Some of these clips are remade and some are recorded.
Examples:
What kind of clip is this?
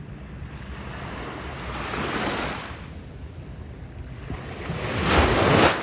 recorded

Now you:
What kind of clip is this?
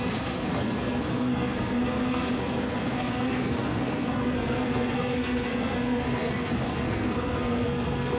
remade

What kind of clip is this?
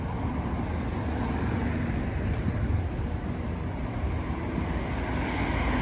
recorded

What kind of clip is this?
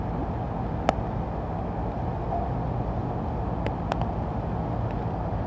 recorded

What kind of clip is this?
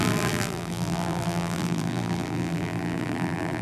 remade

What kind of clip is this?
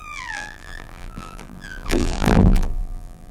remade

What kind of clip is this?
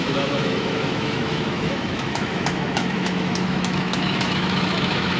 remade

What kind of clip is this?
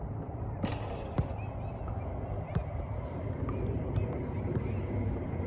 remade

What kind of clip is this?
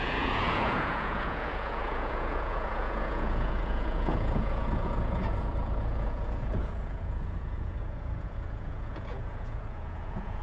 remade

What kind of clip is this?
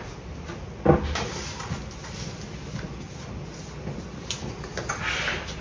recorded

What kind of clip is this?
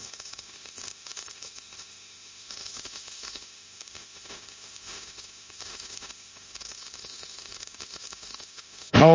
remade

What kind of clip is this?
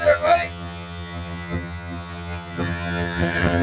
remade